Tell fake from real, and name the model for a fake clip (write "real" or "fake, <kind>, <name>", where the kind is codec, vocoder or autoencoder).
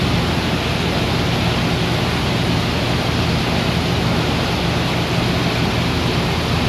real